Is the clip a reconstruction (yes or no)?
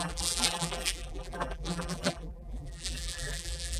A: yes